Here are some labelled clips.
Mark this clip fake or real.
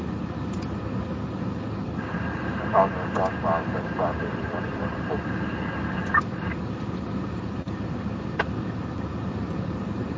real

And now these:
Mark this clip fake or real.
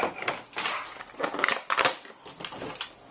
real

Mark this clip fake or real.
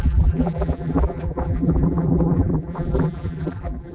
fake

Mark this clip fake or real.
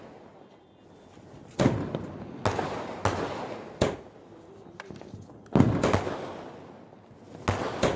real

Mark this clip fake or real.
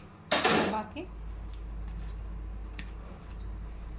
real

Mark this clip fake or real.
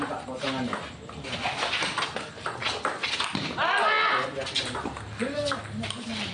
real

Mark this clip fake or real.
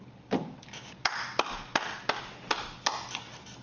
real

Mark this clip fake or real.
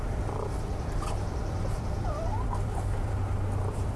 fake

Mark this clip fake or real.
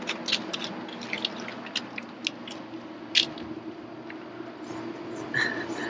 real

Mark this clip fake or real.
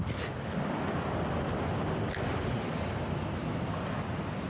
real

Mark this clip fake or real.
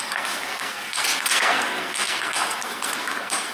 fake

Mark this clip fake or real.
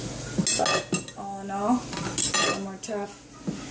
real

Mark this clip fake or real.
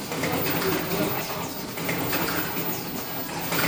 real